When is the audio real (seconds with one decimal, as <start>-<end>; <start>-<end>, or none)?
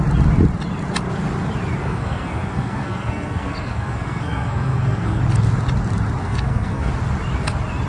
0.0-1.8; 5.2-6.2; 6.9-7.9